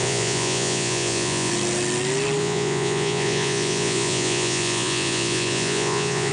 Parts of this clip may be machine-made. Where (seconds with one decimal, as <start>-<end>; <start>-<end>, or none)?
0.0-1.5; 2.4-6.3